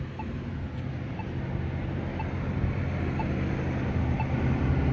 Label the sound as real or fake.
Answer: real